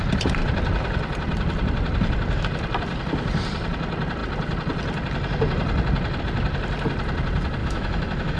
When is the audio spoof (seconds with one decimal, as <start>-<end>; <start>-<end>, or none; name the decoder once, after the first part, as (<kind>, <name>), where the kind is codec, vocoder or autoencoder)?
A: 7.6-8.4 (autoencoder, DAC-VAE)